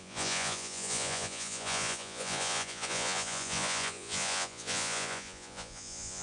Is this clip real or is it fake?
fake